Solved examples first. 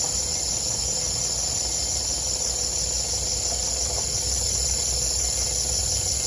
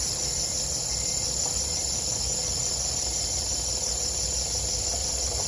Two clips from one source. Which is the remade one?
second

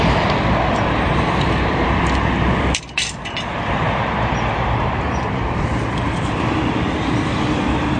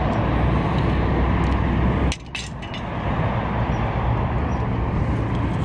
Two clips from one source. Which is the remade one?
first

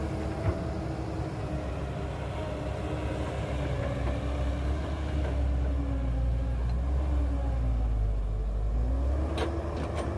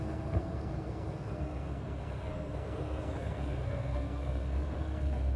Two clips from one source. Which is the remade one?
second